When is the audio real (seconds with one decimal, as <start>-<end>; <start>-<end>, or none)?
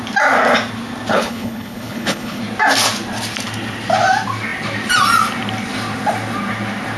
0.0-1.1; 2.4-7.0